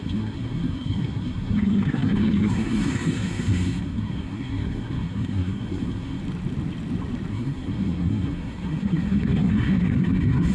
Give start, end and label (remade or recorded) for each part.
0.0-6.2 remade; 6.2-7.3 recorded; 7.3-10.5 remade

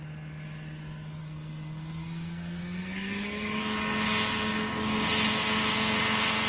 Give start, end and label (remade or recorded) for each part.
0.0-1.2 recorded; 1.2-3.6 remade; 3.6-6.5 recorded